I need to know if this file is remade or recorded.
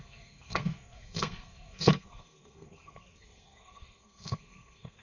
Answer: remade